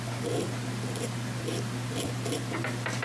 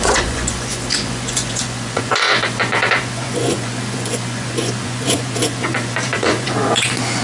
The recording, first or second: first